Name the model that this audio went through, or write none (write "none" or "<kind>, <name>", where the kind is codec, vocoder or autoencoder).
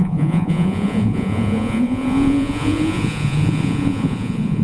vocoder, Vocos